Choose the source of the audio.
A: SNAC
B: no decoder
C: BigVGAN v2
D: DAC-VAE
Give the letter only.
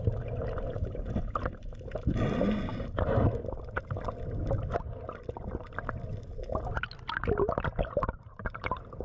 B